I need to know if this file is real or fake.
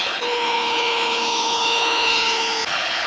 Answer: fake